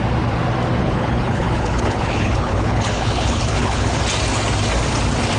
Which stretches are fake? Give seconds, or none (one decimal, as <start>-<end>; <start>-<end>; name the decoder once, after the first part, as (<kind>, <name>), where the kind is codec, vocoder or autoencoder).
0.8-4.0 (codec, HILCodec)